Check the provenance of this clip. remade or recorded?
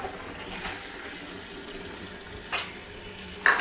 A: recorded